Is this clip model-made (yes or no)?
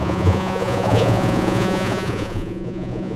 yes